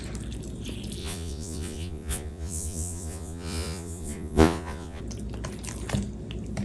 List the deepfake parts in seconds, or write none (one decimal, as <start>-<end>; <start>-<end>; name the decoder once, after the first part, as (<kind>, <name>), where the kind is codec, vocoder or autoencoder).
1.0-5.0 (vocoder, Vocos)